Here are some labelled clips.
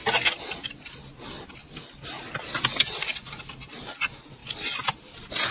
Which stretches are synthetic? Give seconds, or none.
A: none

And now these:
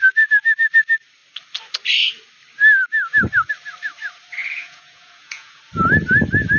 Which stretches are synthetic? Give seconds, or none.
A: 4.4-5.6 (vocoder, Vocos)

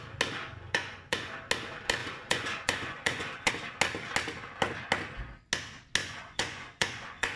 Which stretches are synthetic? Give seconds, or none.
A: 0.5-1.3 (vocoder, Vocos); 2.0-3.5; 6.0-7.4

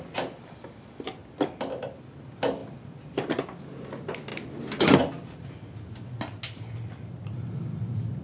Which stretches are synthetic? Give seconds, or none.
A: none

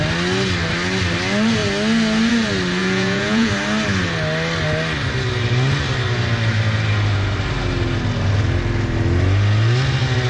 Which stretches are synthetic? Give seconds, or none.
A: 2.8-3.5 (vocoder, Vocos)

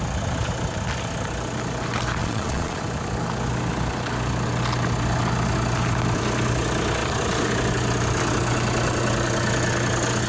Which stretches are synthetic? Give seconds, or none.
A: 2.2-2.8 (vocoder, Vocos)

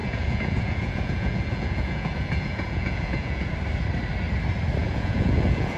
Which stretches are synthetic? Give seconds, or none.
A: 0.0-3.5 (vocoder, Vocos); 4.8-5.8

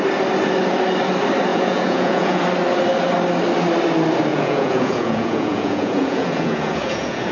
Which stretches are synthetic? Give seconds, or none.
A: 1.5-2.4 (vocoder, Vocos); 4.3-7.3